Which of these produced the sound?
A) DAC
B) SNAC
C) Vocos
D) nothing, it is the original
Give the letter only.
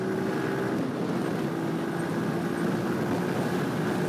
D